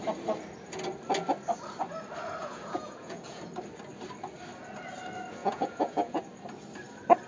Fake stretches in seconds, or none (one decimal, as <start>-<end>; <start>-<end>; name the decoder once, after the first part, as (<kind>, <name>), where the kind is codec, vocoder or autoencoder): 2.4-3.4 (vocoder, Vocos); 5.4-6.2